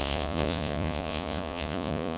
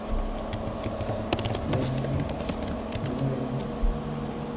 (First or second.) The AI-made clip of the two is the first